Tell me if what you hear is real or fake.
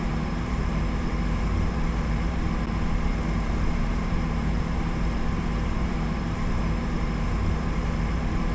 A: fake